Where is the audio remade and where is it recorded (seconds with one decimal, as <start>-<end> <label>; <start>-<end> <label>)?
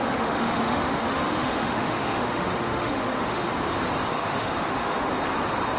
0.0-3.5 remade; 3.5-4.1 recorded; 4.1-5.1 remade; 5.1-5.8 recorded